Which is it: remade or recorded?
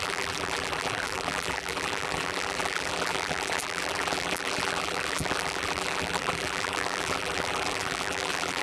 remade